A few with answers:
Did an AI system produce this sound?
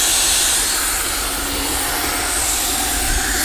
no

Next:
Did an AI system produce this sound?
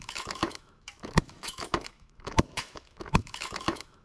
yes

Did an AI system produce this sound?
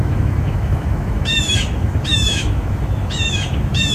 yes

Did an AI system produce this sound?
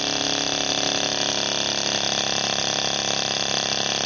no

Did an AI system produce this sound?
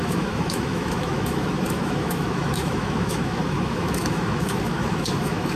yes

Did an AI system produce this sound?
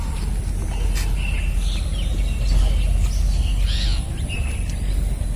no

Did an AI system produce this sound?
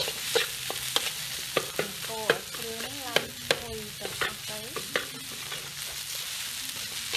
no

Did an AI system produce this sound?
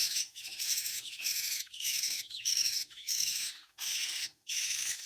yes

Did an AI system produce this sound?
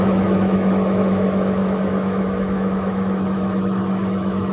yes